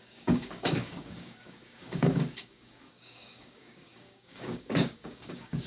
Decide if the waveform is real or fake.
fake